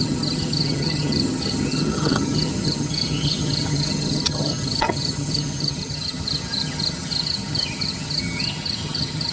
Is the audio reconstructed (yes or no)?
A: yes